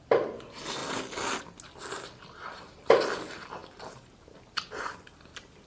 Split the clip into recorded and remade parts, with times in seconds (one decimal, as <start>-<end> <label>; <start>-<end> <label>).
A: 0.0-5.7 recorded